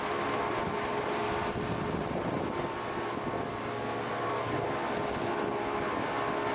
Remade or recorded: recorded